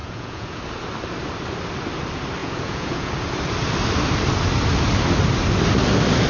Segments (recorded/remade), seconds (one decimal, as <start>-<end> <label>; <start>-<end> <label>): 0.0-0.6 remade; 0.6-2.4 recorded; 2.4-3.1 remade; 3.1-6.3 recorded